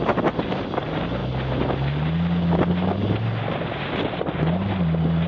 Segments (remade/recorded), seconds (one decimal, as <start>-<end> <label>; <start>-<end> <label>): 0.0-5.3 recorded